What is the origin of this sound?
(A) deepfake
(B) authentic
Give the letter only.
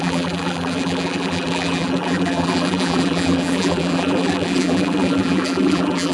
A